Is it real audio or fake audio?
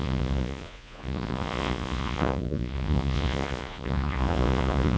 fake